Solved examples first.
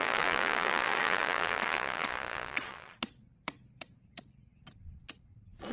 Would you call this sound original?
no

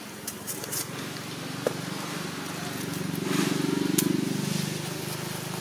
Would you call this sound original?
yes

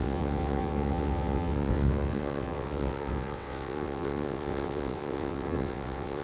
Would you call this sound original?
no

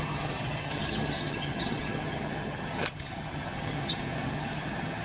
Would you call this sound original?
no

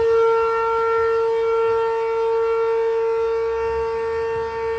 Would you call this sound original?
yes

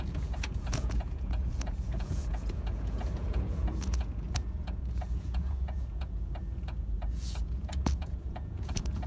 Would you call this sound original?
no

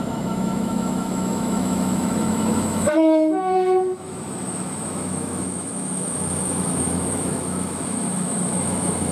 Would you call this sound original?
no